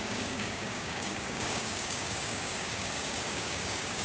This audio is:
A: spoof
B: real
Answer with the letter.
A